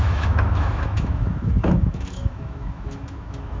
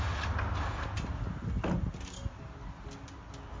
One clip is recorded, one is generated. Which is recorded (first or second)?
second